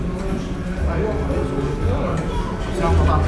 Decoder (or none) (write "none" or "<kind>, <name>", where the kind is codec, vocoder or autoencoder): none